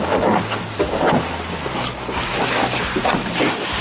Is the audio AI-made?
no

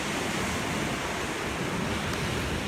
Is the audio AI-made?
no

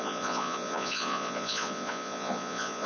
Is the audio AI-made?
yes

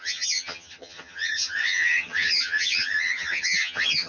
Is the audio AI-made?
yes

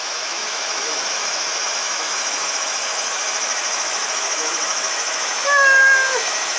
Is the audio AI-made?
yes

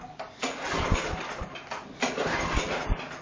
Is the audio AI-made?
no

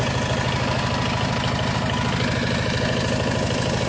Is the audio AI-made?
no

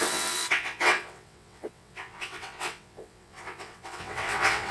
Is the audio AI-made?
yes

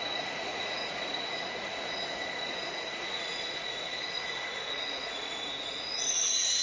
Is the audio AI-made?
yes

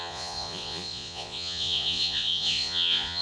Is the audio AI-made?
yes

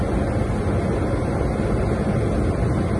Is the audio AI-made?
no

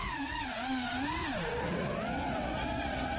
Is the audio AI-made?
yes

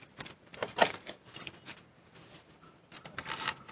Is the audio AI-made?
no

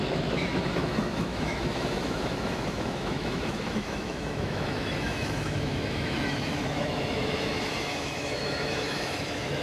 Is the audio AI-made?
yes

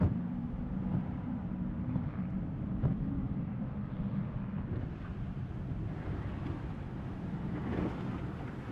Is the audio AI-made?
yes